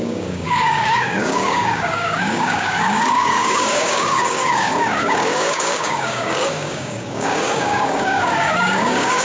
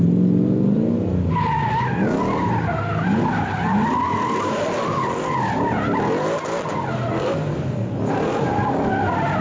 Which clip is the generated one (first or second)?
first